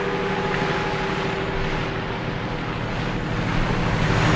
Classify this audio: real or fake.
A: real